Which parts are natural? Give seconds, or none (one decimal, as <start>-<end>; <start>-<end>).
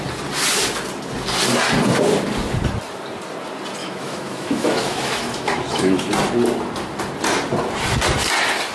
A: 0.0-3.8; 6.1-8.7